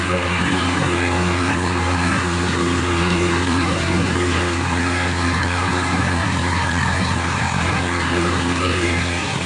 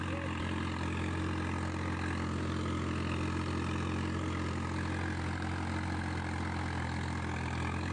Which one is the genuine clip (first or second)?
second